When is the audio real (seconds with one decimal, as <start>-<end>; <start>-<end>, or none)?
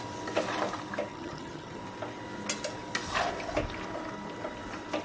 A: 0.0-1.1; 1.8-5.0